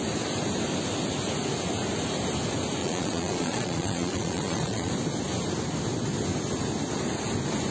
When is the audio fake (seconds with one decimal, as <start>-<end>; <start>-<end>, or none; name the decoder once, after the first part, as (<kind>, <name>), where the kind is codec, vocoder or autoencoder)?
2.8-4.9 (vocoder, Vocos)